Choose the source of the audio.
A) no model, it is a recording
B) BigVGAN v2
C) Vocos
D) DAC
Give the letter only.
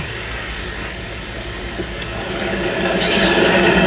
D